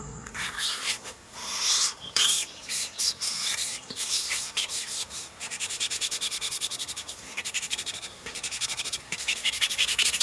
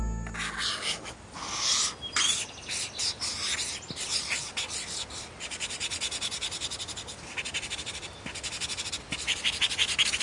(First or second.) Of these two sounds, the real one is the second